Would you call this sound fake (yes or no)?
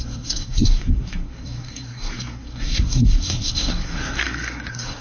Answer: yes